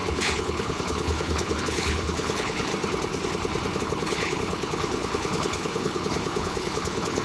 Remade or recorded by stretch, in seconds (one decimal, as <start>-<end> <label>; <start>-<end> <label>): 0.0-2.7 remade; 2.7-3.8 recorded; 3.8-7.2 remade